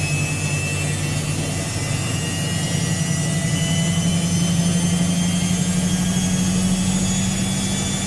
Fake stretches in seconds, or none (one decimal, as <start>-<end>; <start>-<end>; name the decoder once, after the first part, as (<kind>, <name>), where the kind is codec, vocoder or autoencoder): none